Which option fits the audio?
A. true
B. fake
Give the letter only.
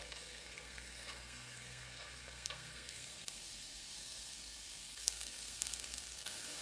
B